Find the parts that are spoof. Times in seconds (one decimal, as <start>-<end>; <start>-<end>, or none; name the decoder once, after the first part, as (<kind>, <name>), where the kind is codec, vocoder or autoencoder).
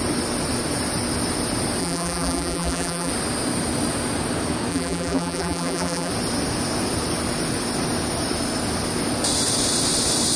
1.8-3.1 (vocoder, BigVGAN v2); 4.7-6.1